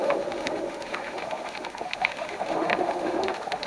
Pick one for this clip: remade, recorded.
remade